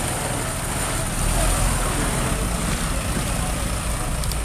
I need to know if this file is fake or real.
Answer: real